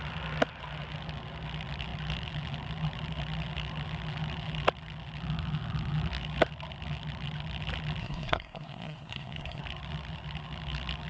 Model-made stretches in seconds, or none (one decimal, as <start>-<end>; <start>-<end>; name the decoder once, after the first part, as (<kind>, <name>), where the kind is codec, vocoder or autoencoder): 8.0-9.6 (codec, SNAC)